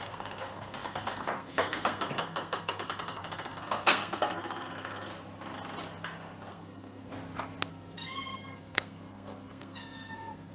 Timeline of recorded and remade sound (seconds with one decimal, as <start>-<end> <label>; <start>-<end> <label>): 0.0-5.1 remade; 5.1-6.5 recorded; 6.5-7.1 remade; 7.1-7.7 recorded; 7.7-10.5 remade